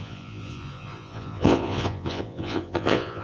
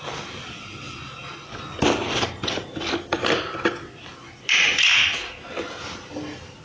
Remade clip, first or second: first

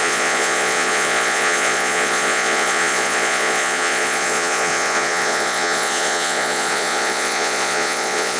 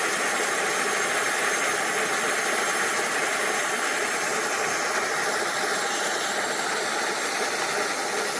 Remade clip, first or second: first